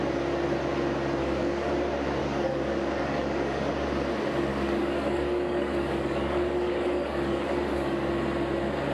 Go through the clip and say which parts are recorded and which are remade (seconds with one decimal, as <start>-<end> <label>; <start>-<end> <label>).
0.0-1.2 recorded; 1.2-1.7 remade; 1.7-2.2 recorded; 2.2-3.7 remade; 3.7-4.5 recorded; 4.5-8.1 remade; 8.1-8.9 recorded